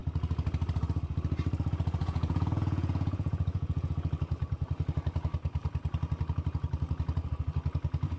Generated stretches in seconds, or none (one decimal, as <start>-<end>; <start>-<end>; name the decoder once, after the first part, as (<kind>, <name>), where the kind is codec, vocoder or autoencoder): 2.0-3.9 (vocoder, Vocos)